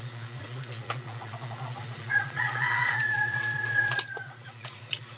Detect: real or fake fake